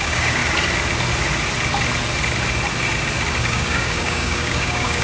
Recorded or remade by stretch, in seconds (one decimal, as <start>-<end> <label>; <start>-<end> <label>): 0.0-0.4 remade; 0.4-3.4 recorded; 3.4-5.0 remade